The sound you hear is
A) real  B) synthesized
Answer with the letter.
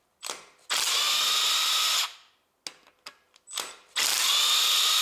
A